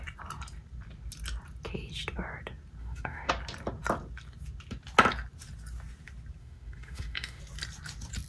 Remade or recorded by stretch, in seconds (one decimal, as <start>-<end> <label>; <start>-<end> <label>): 0.0-2.8 recorded; 2.8-3.3 remade; 3.3-6.4 recorded; 6.4-7.4 remade; 7.4-8.3 recorded